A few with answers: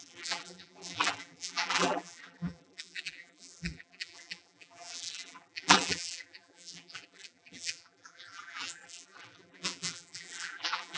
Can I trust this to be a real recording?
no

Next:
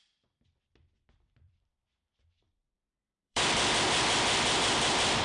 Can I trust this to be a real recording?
no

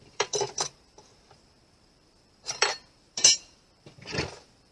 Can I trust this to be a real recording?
no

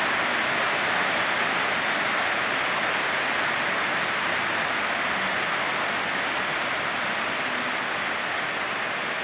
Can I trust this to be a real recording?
yes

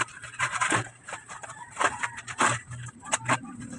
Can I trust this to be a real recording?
no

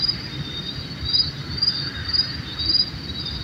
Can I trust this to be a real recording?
yes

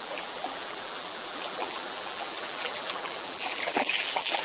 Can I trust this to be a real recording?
no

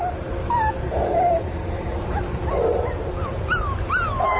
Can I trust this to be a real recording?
no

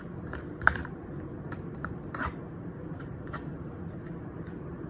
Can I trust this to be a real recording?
no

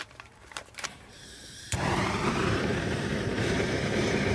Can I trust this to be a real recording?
no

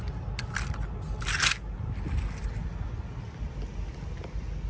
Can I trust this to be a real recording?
yes